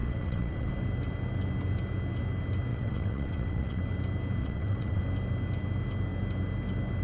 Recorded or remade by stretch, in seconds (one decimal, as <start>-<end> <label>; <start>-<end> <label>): 0.0-0.7 remade; 0.7-2.7 recorded; 2.7-3.8 remade; 3.8-4.4 recorded; 4.4-5.0 remade; 5.0-7.0 recorded